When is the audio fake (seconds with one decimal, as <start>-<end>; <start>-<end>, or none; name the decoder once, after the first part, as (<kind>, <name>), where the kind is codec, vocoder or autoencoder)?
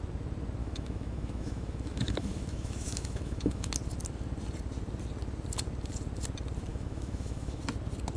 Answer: 0.6-3.7 (autoencoder, DAC-VAE); 6.7-7.6